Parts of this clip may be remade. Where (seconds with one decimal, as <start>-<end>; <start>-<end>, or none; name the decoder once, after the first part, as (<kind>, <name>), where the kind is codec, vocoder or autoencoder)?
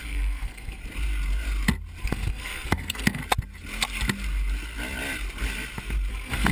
0.0-0.8 (codec, SNAC); 2.0-3.2; 6.1-6.5